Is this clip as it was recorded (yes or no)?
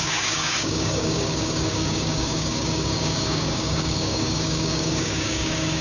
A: no